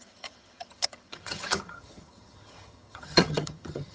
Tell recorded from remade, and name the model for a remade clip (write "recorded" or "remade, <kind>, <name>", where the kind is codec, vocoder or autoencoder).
remade, vocoder, HiFi-GAN